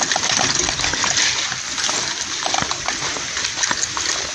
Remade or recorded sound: recorded